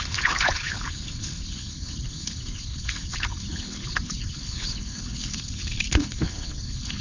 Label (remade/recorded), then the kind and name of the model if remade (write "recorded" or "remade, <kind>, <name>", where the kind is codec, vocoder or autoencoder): remade, codec, HILCodec